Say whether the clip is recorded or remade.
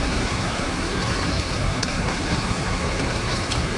remade